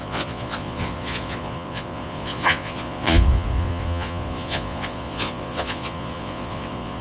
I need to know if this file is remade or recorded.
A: remade